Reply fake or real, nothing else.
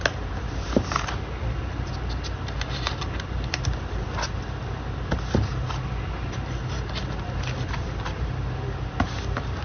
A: real